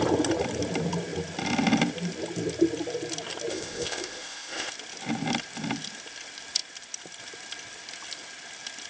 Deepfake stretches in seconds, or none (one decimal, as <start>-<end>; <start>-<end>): 3.5-4.7